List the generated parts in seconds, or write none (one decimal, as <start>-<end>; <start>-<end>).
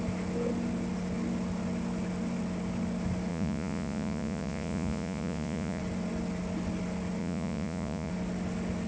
3.3-5.8; 7.2-8.1